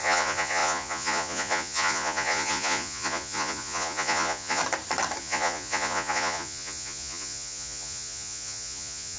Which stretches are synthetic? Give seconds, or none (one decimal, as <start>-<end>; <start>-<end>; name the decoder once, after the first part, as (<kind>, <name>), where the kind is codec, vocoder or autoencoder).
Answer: 0.0-4.6 (vocoder, Vocos); 5.2-9.2